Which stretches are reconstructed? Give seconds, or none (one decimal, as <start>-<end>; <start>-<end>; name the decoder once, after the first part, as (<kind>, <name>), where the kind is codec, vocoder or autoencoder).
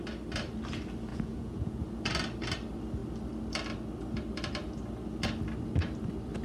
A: 1.1-1.8 (vocoder, Vocos)